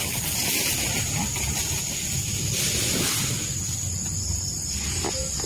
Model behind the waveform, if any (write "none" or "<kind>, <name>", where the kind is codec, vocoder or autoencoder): none